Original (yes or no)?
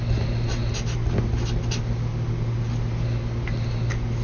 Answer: yes